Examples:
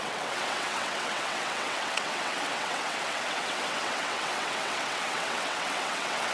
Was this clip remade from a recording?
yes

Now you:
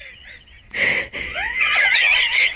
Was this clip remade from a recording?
yes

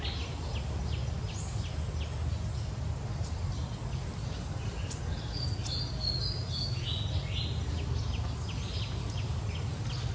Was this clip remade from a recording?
no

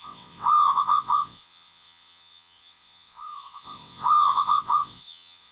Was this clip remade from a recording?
yes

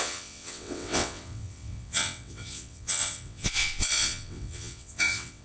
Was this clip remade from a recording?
yes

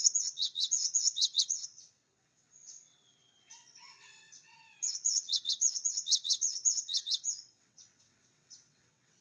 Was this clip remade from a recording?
yes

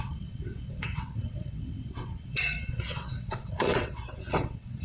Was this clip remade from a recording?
yes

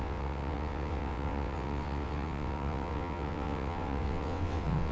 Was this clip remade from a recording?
yes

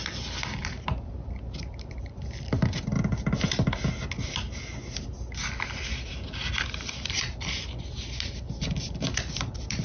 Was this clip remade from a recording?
no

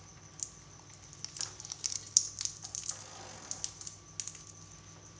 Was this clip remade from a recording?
no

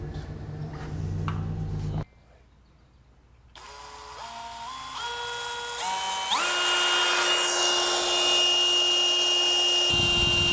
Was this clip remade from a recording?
no